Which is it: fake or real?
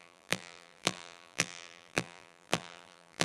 fake